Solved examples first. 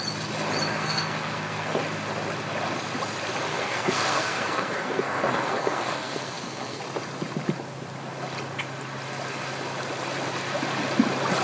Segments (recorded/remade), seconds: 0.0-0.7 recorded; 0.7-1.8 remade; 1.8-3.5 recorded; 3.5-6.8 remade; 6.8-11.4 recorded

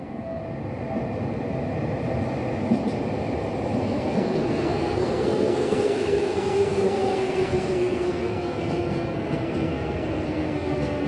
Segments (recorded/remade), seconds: 0.0-0.4 remade; 0.4-3.8 recorded; 3.8-11.1 remade